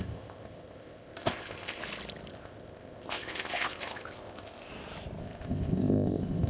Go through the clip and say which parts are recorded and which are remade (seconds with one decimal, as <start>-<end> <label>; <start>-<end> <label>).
0.0-1.8 remade; 1.8-2.3 recorded; 2.3-4.7 remade; 4.7-5.2 recorded; 5.2-6.5 remade